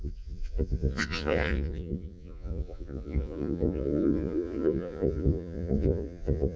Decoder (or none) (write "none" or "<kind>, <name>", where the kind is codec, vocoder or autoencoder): vocoder, Vocos